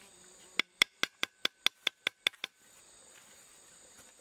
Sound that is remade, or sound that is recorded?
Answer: recorded